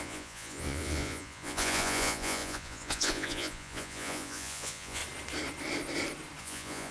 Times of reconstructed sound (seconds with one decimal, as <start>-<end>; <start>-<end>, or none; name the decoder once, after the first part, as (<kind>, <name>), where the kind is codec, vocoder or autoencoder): 0.0-5.0 (vocoder, Vocos); 6.4-6.9